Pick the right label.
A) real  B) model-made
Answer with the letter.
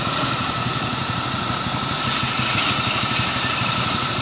B